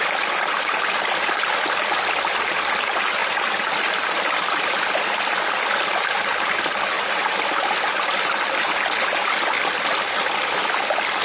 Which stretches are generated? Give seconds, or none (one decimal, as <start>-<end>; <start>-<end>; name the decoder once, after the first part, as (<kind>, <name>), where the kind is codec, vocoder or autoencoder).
none